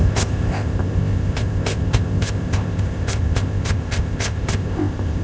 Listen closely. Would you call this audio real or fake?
fake